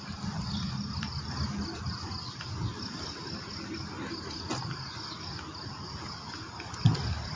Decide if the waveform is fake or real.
real